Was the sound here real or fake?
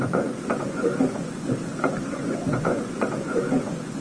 fake